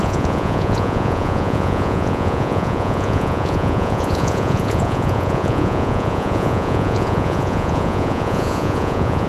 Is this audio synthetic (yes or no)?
yes